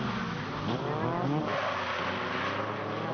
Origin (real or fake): real